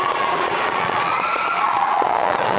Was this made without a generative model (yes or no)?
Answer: no